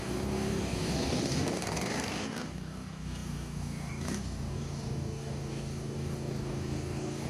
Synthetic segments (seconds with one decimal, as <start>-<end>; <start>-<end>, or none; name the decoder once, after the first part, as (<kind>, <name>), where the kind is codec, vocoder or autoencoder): 0.0-7.3 (codec, DAC)